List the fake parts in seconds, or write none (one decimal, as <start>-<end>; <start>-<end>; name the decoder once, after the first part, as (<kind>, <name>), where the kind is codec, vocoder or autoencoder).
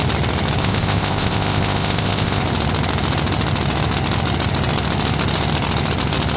0.6-2.4 (codec, ZipCodec)